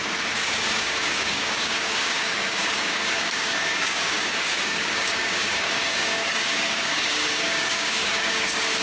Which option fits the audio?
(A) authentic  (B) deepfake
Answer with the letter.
B